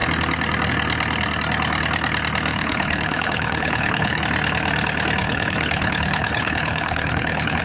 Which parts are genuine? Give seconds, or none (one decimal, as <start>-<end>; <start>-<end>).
0.0-2.5; 4.2-5.2